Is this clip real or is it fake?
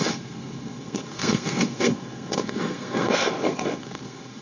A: fake